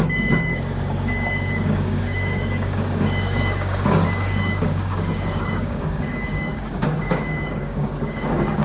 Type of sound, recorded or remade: remade